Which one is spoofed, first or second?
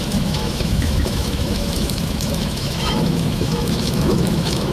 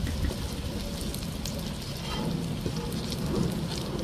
first